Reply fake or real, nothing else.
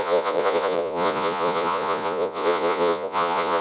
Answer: fake